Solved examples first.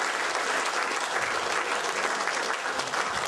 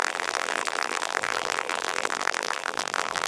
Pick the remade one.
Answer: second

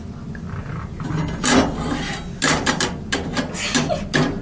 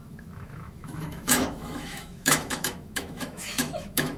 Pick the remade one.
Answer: second